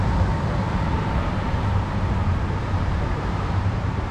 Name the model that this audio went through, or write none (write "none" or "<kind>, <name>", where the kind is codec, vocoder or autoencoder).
vocoder, BigVGAN v2